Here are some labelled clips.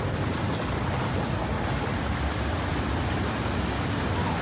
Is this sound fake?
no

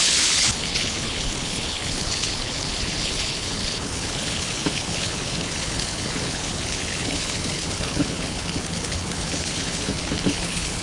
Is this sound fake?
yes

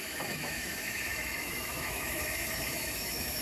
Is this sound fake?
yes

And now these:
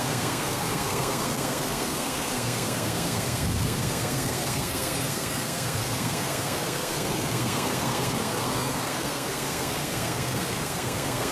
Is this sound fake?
yes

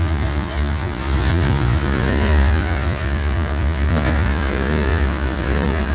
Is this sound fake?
yes